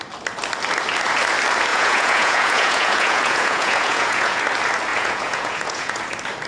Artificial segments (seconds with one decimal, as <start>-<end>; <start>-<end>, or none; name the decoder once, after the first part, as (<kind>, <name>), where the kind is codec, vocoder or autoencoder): 1.7-4.4 (vocoder, Vocos); 4.9-6.0